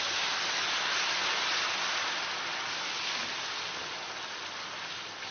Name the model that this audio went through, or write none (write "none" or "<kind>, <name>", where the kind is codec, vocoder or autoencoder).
none